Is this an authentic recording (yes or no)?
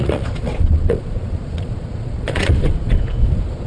no